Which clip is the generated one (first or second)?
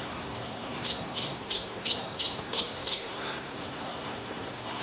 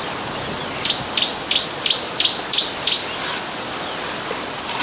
first